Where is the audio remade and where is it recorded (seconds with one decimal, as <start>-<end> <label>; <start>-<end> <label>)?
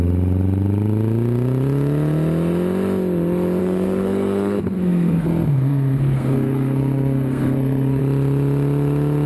0.0-3.6 recorded; 3.6-8.0 remade; 8.0-9.3 recorded